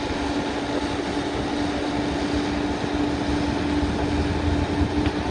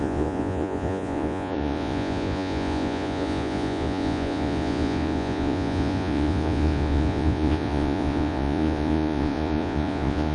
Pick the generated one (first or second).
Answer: second